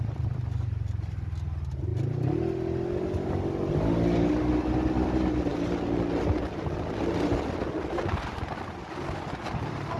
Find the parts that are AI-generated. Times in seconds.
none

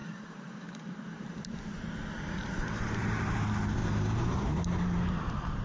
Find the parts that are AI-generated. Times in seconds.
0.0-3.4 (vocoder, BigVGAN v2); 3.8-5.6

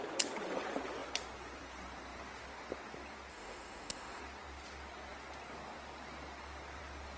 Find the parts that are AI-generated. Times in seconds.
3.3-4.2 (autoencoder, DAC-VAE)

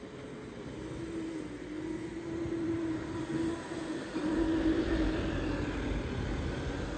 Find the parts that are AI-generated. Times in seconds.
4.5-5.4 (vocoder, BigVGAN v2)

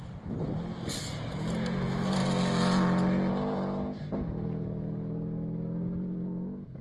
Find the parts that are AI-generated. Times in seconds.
none

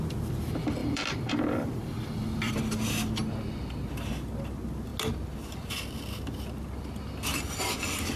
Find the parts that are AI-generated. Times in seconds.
0.8-2.5 (vocoder, BigVGAN v2)

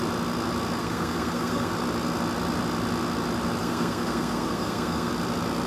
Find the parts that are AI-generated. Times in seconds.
0.8-1.7 (codec, SNAC); 3.6-5.1